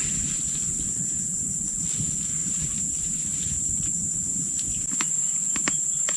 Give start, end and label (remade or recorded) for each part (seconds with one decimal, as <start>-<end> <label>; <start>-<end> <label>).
0.0-2.4 recorded; 2.4-6.2 remade